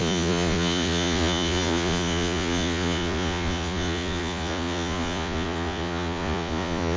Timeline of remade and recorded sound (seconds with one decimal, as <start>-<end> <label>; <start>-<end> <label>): 0.0-7.0 remade